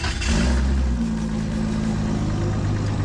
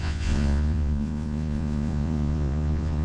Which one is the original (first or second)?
first